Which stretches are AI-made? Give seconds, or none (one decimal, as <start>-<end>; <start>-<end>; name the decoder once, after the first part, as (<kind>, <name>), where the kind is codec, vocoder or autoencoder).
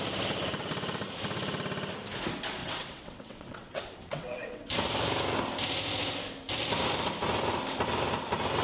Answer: 2.6-4.7 (vocoder, WaveNeXt)